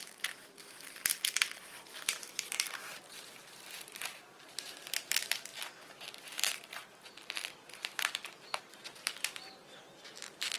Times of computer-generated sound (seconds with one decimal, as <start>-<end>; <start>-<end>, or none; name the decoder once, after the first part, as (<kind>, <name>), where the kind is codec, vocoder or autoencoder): 0.0-1.1 (vocoder, BigVGAN v2); 1.7-10.6